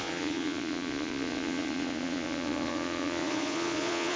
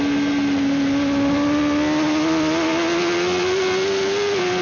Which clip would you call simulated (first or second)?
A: first